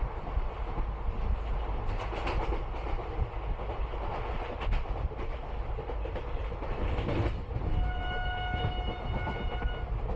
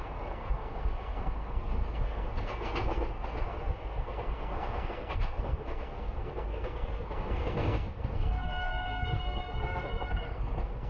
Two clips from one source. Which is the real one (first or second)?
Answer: first